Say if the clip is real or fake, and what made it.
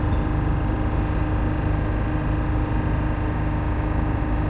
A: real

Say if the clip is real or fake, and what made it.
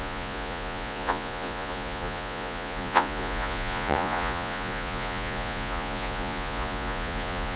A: fake, vocoder, Vocos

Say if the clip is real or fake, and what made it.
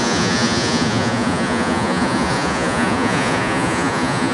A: fake, vocoder, Vocos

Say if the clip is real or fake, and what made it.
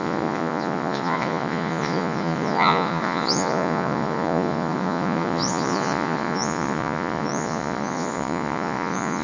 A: fake, vocoder, Vocos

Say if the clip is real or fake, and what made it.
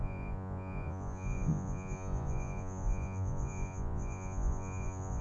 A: fake, vocoder, Vocos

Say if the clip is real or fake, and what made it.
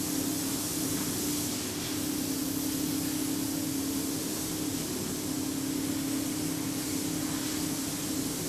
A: real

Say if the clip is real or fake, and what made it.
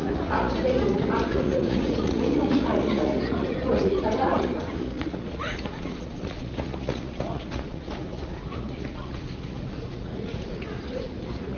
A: fake, vocoder, Vocos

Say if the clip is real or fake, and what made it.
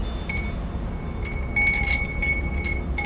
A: real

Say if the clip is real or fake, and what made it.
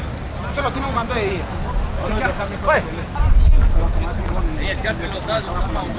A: real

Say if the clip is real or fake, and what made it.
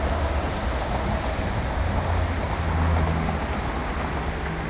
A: real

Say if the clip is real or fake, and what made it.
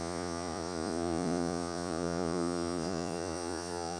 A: fake, vocoder, Vocos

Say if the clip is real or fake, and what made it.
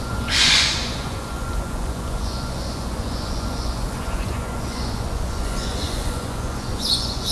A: fake, vocoder, Vocos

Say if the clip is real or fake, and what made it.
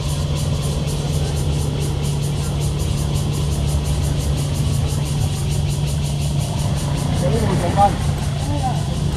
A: real